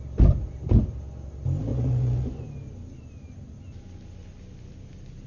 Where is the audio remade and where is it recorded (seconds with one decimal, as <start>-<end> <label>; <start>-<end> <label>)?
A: 0.0-1.7 recorded; 1.7-2.4 remade; 2.4-5.3 recorded